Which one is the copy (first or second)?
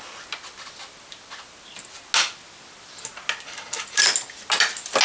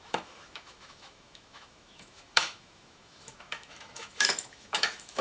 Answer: second